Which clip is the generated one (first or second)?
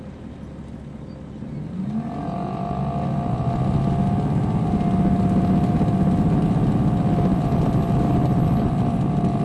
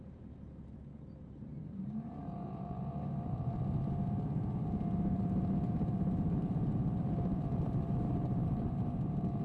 second